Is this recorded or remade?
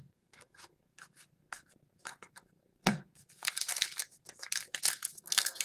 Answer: remade